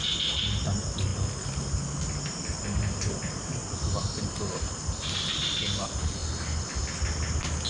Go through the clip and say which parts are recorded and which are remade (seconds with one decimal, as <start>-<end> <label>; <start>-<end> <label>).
0.0-7.7 recorded